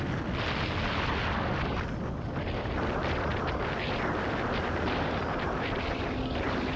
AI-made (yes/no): no